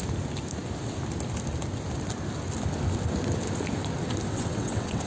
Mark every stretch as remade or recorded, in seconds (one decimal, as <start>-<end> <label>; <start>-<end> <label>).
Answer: 0.0-4.3 recorded; 4.3-5.1 remade